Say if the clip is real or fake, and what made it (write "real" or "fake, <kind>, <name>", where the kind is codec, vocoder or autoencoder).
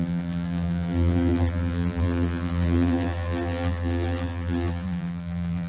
fake, vocoder, BigVGAN v2